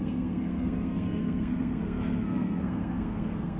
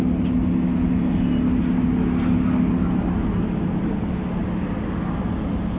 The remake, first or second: first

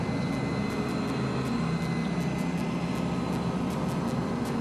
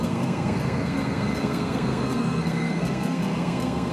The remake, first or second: second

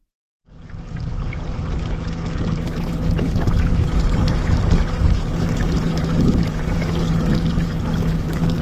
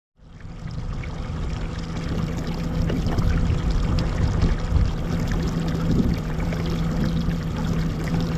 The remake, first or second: first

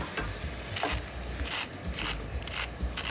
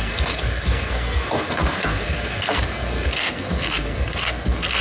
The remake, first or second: second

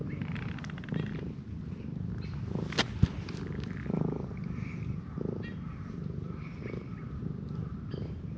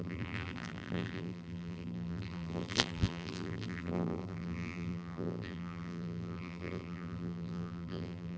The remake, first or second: second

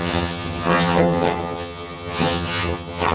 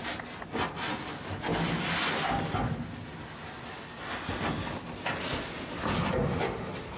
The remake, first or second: first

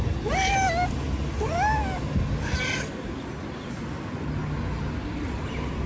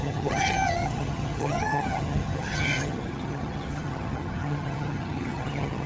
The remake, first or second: second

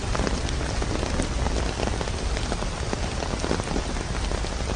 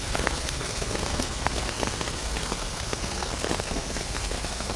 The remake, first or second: second